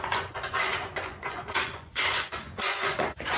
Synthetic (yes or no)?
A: yes